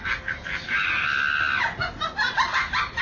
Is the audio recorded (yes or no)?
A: yes